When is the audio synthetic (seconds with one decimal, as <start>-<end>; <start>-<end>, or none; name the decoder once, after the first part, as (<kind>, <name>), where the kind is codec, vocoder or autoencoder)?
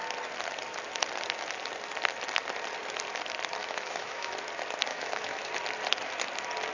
3.6-4.3 (autoencoder, DAC-VAE); 4.9-5.5